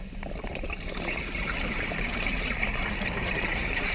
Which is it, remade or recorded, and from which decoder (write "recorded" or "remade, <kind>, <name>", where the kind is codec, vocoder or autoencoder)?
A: recorded